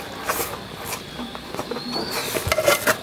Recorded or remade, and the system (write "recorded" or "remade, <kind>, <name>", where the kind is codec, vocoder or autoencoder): remade, vocoder, BigVGAN v2